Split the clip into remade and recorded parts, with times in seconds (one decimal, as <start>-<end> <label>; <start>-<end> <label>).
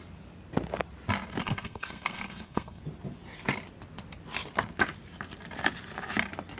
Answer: 0.0-1.4 recorded; 1.4-2.8 remade; 2.8-6.6 recorded